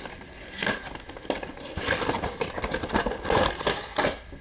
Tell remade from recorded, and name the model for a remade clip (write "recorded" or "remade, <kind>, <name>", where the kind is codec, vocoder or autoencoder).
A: recorded